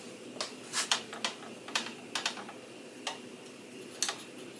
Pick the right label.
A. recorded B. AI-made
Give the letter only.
A